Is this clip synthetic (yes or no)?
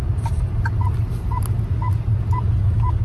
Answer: no